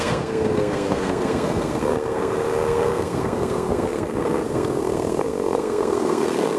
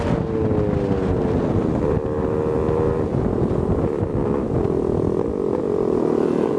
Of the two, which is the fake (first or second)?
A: first